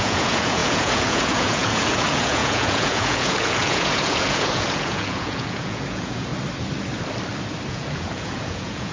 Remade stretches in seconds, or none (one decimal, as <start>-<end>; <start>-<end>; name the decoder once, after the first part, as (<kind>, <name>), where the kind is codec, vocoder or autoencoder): 0.0-6.3 (vocoder, Vocos); 7.7-8.9